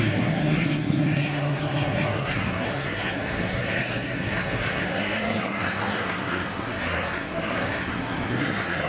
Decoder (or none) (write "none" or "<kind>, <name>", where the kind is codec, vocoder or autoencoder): codec, SNAC